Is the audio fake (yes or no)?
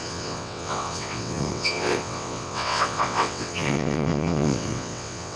yes